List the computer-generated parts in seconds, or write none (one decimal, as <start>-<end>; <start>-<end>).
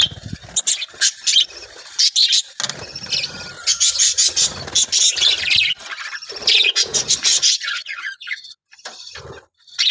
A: 6.9-8.7